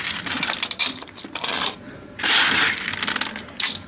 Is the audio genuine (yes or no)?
no